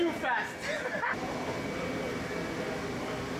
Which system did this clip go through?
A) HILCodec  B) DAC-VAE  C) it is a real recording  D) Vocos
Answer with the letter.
C